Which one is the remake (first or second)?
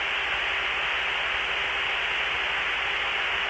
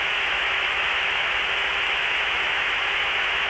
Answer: second